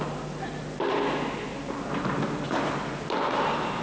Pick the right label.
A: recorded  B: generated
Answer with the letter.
A